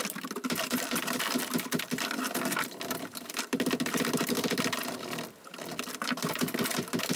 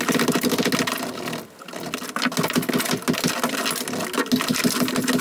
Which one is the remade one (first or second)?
first